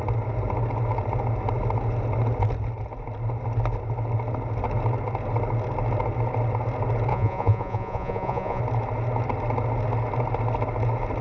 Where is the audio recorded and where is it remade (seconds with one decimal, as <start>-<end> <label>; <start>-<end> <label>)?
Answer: 0.0-7.1 recorded; 7.1-8.6 remade; 8.6-11.2 recorded